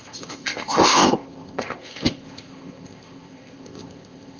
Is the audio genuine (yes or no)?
no